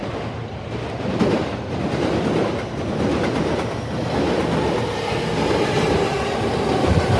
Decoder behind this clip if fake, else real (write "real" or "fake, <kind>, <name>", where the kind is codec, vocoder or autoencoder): real